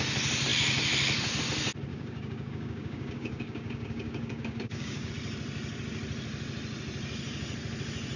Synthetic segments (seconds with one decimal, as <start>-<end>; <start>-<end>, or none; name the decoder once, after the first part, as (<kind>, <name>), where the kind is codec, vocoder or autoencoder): 1.9-5.1 (codec, DAC)